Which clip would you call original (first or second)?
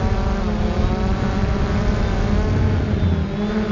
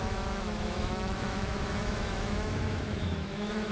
first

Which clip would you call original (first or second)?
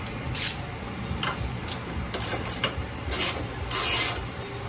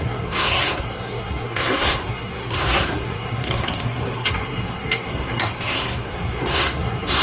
first